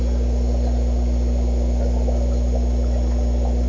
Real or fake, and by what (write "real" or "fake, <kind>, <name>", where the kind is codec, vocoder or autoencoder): real